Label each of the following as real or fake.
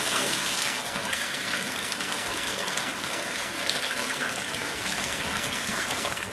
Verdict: fake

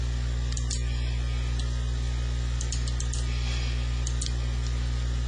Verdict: real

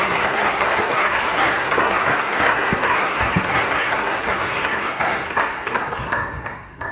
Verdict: fake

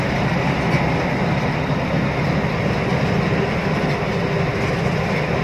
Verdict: real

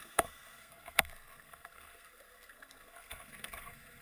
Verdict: fake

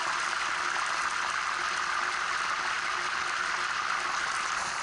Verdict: real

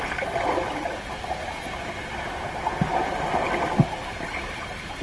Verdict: real